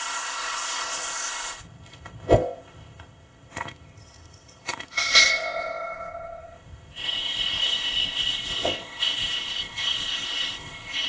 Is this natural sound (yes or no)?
no